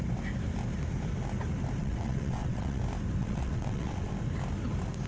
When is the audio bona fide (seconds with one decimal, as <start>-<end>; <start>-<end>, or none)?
0.0-1.8; 2.8-3.2; 4.1-5.1